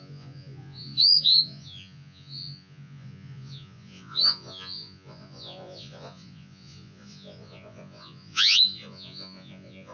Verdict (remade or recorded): remade